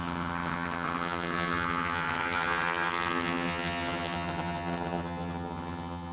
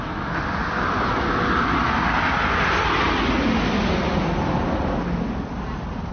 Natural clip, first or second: second